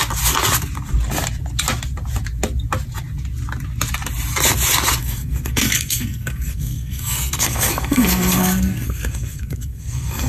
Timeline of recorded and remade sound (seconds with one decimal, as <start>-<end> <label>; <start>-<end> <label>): 0.0-5.0 recorded; 5.0-10.3 remade